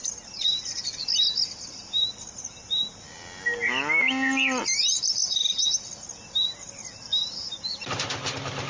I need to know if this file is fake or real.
real